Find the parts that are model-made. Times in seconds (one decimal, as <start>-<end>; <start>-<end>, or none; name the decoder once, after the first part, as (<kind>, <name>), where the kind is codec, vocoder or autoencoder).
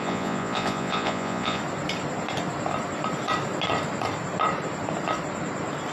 0.0-1.6 (vocoder, Vocos)